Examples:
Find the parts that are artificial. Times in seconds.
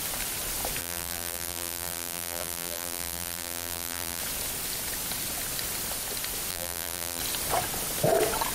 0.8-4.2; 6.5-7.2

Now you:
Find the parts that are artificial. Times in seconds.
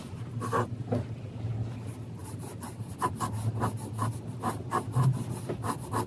2.2-2.9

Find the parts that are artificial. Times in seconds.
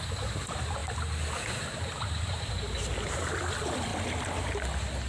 0.8-2.4; 3.9-5.1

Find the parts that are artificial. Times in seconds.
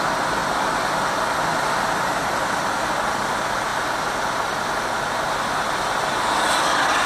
none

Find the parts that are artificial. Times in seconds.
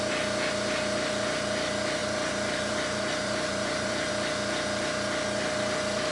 2.0-4.1